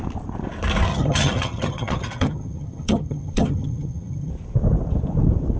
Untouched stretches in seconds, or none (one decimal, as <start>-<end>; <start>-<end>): 0.0-0.9; 4.3-5.6